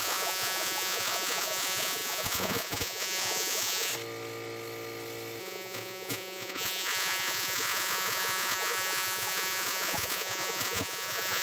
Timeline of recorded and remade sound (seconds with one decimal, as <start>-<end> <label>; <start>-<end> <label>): 0.0-3.9 remade; 3.9-5.4 recorded; 5.4-11.4 remade